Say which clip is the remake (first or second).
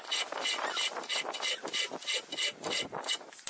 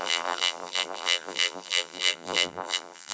second